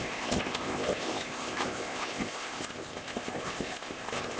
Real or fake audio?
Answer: fake